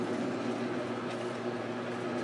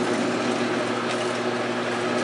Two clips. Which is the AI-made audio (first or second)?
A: first